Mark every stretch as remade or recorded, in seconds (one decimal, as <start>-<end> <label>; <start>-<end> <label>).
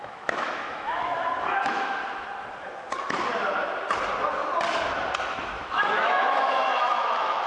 0.0-2.0 remade; 2.0-5.2 recorded; 5.2-7.5 remade